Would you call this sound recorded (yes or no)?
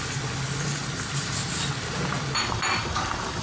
yes